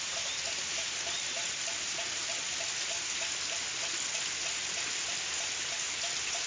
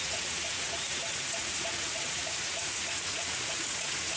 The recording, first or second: first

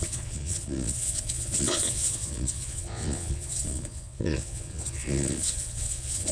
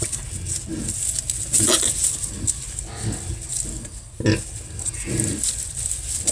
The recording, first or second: second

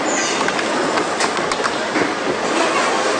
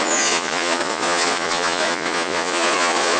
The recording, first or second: first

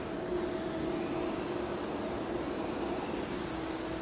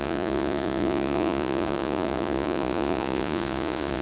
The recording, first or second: first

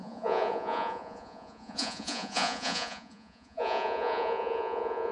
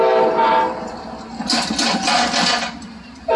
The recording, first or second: second